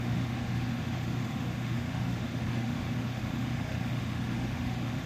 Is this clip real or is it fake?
fake